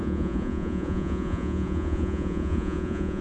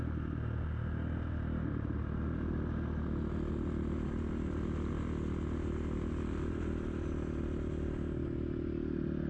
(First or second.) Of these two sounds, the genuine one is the second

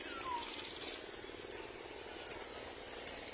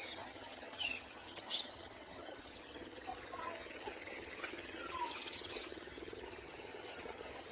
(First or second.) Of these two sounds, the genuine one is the first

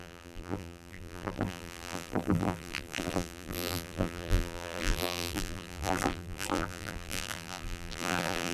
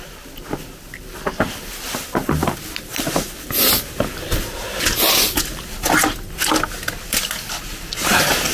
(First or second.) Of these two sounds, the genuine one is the second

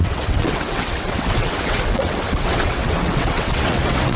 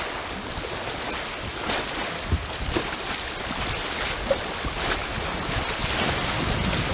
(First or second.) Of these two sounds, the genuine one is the second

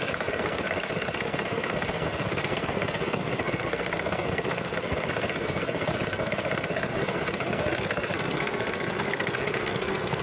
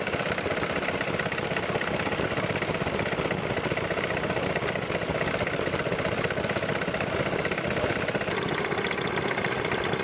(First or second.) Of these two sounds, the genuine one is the second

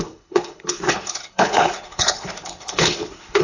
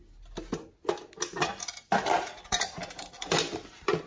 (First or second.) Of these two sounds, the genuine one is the second